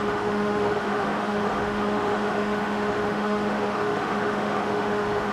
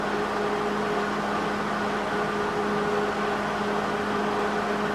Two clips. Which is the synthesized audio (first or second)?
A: first